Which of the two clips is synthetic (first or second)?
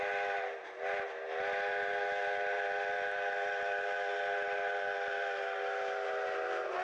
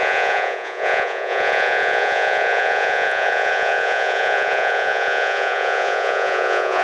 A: second